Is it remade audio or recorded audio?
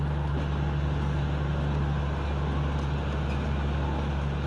recorded